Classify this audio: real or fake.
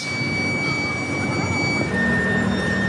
real